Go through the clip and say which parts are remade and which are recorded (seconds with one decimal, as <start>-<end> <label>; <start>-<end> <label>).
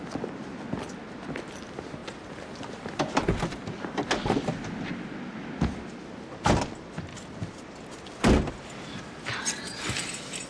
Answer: 0.0-10.5 recorded